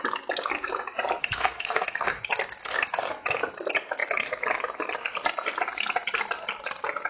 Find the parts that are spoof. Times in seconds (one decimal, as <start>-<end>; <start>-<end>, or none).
1.2-2.2; 2.6-3.1